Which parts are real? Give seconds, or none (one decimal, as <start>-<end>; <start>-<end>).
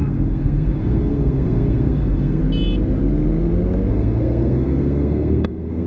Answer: 2.4-3.9